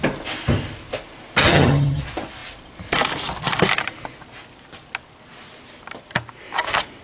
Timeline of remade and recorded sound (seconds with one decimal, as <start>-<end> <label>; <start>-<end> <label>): 0.0-1.4 recorded; 1.4-2.0 remade; 2.0-7.0 recorded